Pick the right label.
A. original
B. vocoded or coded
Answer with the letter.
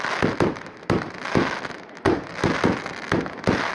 A